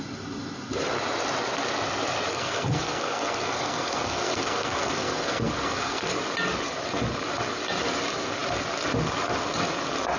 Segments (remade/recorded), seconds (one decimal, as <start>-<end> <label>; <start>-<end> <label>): 0.0-2.3 recorded; 2.3-6.1 remade; 6.1-10.2 recorded